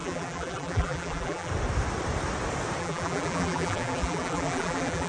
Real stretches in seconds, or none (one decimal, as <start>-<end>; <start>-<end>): 1.5-2.8